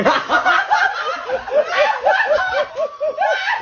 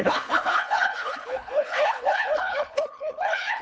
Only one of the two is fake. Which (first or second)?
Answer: second